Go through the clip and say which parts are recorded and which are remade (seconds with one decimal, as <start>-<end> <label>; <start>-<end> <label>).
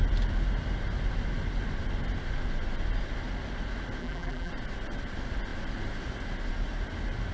0.0-4.0 recorded; 4.0-4.5 remade; 4.5-7.3 recorded